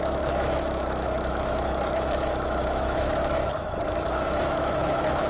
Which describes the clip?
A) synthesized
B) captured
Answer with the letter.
A